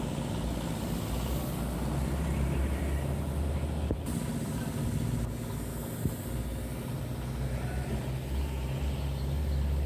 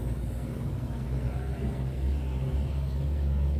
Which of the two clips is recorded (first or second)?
first